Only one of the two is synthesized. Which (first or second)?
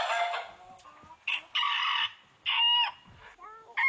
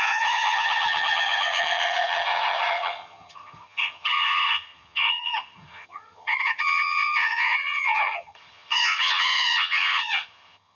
second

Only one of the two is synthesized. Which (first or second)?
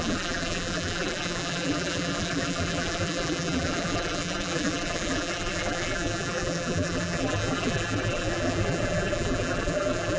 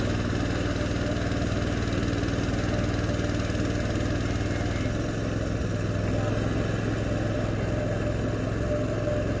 first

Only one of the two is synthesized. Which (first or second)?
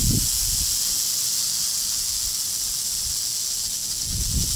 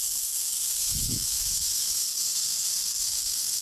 second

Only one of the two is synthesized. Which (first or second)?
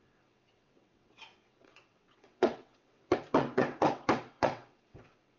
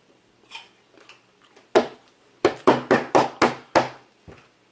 first